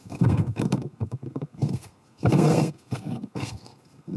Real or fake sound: fake